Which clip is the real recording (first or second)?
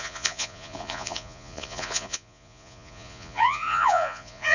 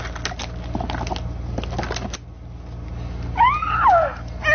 second